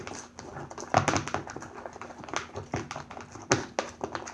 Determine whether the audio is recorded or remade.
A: recorded